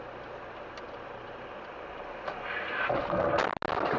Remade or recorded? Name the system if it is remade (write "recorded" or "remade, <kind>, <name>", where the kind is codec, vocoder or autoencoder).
recorded